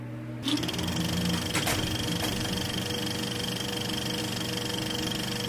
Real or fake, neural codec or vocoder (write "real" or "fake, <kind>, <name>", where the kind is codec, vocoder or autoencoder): real